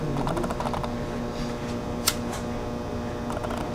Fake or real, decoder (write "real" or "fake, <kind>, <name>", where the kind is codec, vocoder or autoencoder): real